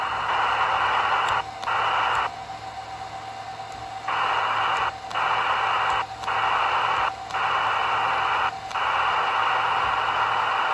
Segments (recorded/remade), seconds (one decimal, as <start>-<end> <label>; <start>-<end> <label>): 0.0-10.7 recorded